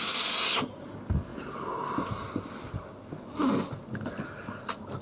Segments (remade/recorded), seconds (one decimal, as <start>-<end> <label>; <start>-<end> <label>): 0.0-5.0 recorded